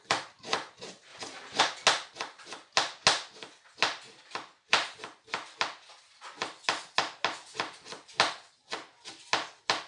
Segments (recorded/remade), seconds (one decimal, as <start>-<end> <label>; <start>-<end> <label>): 0.0-9.9 recorded